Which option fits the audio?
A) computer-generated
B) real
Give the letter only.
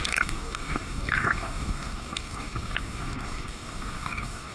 A